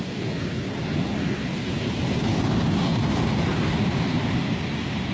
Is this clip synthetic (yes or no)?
no